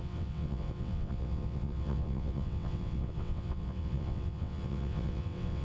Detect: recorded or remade remade